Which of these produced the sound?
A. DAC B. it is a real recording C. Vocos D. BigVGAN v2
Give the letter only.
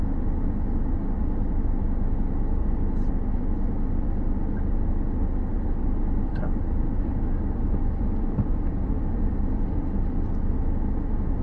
B